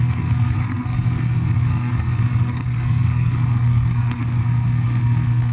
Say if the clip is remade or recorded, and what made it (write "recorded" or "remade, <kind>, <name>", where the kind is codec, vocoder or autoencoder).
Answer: remade, codec, SNAC